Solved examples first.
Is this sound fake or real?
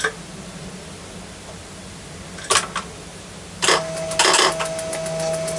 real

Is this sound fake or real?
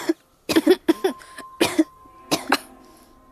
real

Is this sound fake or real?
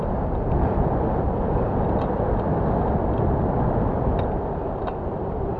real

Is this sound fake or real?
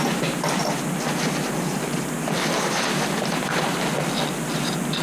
real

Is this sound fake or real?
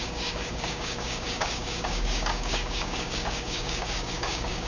fake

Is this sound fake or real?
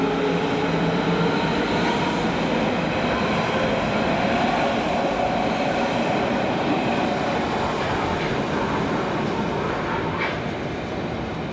real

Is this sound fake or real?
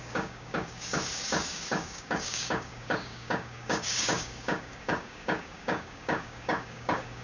fake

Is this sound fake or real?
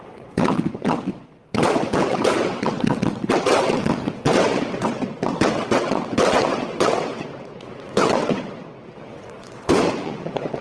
fake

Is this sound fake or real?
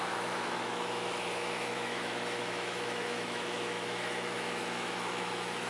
fake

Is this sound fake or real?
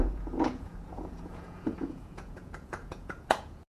fake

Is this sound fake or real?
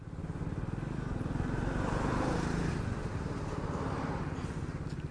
real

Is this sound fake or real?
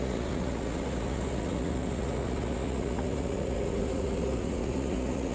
fake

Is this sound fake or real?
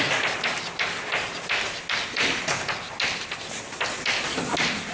real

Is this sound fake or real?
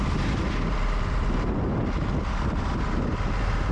real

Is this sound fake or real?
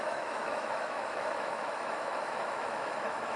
fake